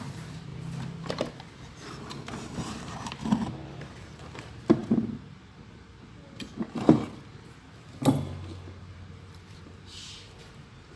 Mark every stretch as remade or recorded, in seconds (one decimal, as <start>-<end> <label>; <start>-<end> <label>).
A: 0.0-0.5 remade; 0.5-1.1 recorded; 1.1-4.8 remade; 4.8-8.8 recorded; 8.8-11.0 remade